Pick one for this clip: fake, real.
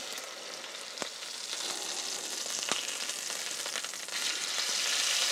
real